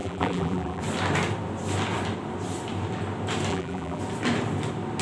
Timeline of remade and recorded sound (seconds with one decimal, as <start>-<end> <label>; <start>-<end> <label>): 0.0-0.8 remade; 0.8-3.5 recorded; 3.5-4.0 remade; 4.0-5.0 recorded